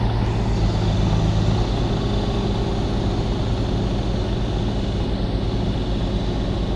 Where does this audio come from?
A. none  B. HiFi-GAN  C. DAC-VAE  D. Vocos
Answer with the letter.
A